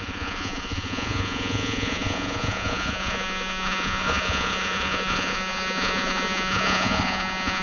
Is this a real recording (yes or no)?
no